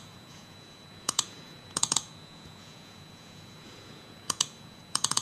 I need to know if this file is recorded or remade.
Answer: remade